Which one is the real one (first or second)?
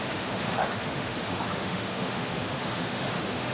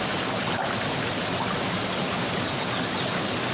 second